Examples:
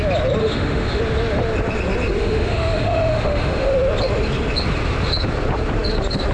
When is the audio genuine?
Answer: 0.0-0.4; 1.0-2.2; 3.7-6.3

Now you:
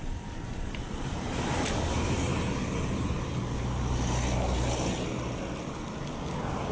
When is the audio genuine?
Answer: 2.3-6.3

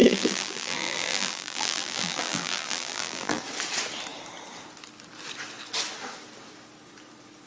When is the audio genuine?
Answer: 3.4-7.5

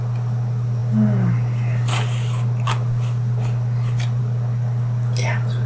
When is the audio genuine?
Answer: 0.0-5.7